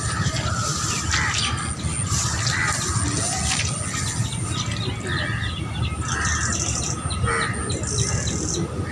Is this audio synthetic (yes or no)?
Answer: no